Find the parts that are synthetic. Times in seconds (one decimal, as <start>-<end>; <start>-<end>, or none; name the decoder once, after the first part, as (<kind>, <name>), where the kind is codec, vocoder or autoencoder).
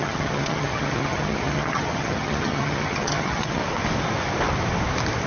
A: 0.0-3.6 (vocoder, HiFi-GAN)